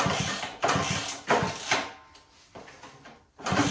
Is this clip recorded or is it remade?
recorded